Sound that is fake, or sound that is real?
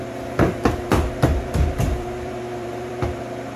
fake